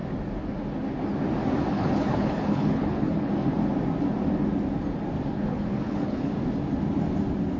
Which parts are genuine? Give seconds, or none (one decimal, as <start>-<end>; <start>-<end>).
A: 0.0-1.7; 3.3-5.5; 6.3-7.6

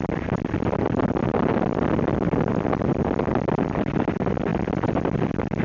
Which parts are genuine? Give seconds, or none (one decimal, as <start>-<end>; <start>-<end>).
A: 0.0-5.6

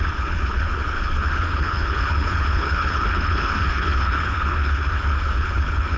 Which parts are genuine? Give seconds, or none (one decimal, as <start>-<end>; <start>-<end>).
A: none